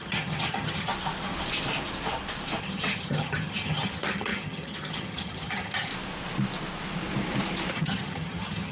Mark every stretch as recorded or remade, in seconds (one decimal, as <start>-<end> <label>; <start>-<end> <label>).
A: 0.0-0.9 remade; 0.9-2.6 recorded; 2.6-5.9 remade; 5.9-7.7 recorded; 7.7-8.7 remade

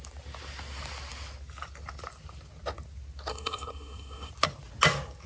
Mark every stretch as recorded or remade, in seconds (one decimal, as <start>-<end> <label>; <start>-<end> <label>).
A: 0.0-3.3 recorded; 3.3-4.3 remade; 4.3-5.3 recorded

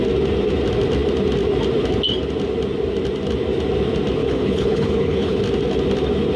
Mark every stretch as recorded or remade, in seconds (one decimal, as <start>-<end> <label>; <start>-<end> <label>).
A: 0.0-4.2 recorded; 4.2-5.4 remade; 5.4-6.4 recorded